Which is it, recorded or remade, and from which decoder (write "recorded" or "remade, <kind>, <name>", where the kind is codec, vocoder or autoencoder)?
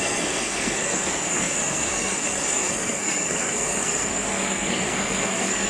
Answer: remade, codec, SNAC